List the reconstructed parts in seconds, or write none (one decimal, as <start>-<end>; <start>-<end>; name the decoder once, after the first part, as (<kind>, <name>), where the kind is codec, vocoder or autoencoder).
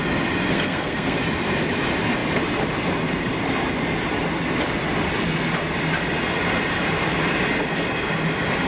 0.5-1.2 (codec, SNAC)